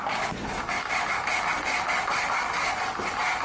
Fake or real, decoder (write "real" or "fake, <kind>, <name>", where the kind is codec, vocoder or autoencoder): real